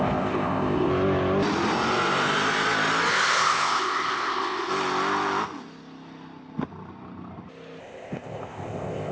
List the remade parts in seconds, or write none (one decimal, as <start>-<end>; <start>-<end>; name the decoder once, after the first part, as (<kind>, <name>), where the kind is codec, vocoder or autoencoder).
0.0-0.9 (codec, ZipCodec); 3.1-4.7; 7.8-9.1